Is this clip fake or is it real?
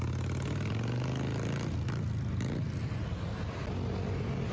real